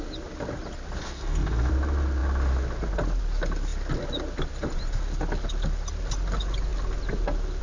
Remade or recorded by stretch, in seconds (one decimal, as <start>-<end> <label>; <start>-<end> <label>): 0.0-1.0 recorded; 1.0-1.7 remade; 1.7-7.6 recorded